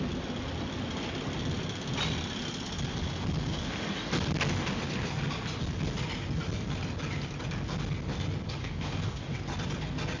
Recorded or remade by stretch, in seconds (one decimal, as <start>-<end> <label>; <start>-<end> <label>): 0.0-8.6 recorded; 8.6-9.4 remade; 9.4-10.2 recorded